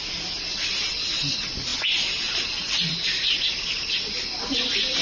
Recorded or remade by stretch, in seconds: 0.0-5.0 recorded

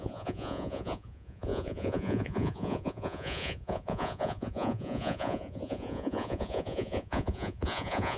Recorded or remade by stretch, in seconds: 0.0-8.2 remade

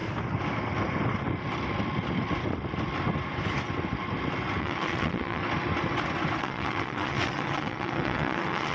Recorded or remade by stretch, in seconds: 0.0-4.6 recorded; 4.6-5.4 remade; 5.4-6.4 recorded; 6.4-8.7 remade

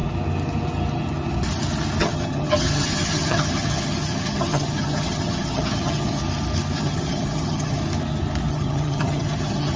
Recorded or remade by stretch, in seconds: 0.0-2.0 recorded; 2.0-6.2 remade; 6.2-6.8 recorded; 6.8-7.8 remade; 7.8-8.5 recorded; 8.5-9.8 remade

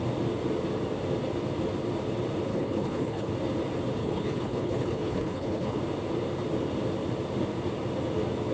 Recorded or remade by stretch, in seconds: 0.0-2.5 recorded; 2.5-3.3 remade; 3.3-4.0 recorded; 4.0-5.8 remade; 5.8-8.5 recorded

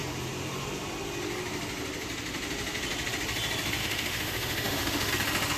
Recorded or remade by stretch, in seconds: 0.0-3.8 recorded; 3.8-5.1 remade; 5.1-5.6 recorded

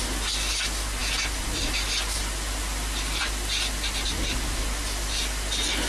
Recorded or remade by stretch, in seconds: 0.0-5.9 recorded